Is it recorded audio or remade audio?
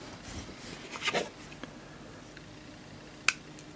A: recorded